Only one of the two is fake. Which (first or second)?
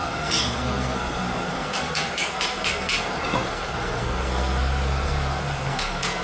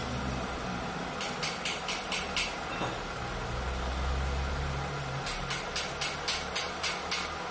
first